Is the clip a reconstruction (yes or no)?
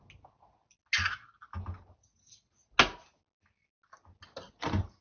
no